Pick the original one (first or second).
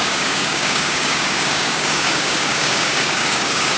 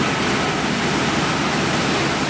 second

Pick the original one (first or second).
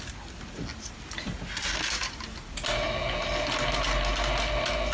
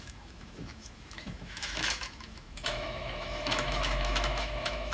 first